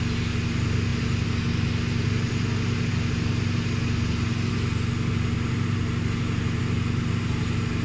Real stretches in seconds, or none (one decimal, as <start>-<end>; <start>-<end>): 0.0-7.8